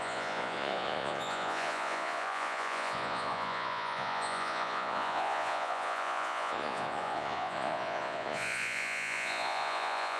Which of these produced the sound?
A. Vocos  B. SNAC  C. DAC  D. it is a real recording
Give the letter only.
A